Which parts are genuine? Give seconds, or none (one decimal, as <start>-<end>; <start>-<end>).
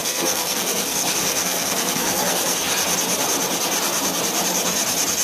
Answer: 2.7-5.2